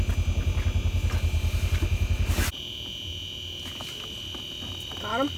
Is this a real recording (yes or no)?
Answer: yes